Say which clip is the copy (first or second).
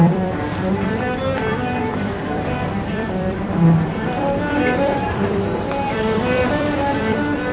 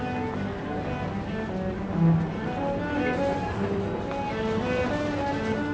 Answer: first